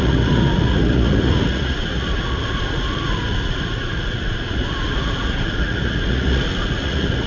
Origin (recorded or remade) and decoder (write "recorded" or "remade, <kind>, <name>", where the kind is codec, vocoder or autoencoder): remade, vocoder, Vocos